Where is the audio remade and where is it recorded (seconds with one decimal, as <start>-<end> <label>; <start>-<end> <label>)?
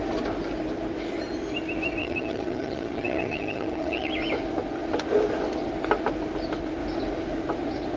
0.0-2.0 recorded; 2.0-4.1 remade; 4.1-8.0 recorded